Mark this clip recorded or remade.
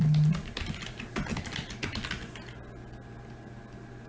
recorded